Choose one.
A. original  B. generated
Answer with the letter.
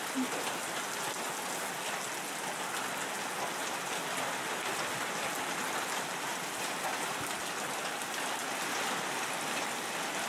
A